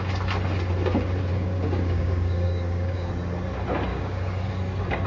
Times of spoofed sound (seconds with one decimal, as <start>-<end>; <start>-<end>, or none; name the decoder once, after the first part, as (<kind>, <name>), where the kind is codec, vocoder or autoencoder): 1.3-3.1 (codec, DAC); 3.9-4.5